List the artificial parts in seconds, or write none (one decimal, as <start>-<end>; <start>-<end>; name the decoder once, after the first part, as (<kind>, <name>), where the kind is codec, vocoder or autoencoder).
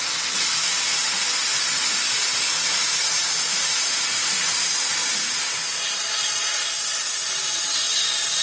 none